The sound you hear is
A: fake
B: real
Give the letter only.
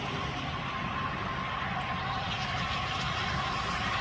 B